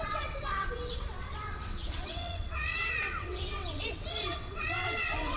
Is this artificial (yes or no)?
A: yes